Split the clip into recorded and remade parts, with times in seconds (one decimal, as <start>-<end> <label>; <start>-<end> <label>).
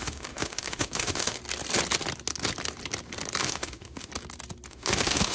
0.0-1.4 remade; 1.4-3.4 recorded; 3.4-4.1 remade; 4.1-4.7 recorded; 4.7-5.3 remade